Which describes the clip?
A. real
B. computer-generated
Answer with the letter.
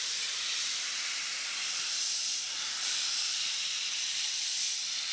B